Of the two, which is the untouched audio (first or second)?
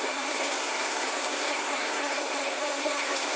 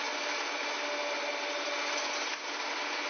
second